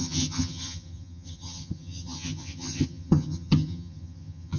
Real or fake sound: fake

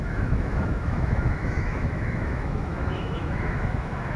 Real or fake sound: fake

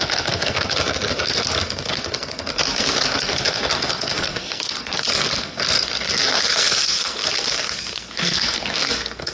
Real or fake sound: fake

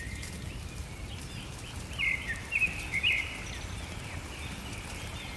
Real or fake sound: real